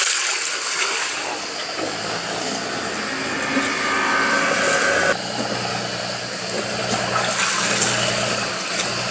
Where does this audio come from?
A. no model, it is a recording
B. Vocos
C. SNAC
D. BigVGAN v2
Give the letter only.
A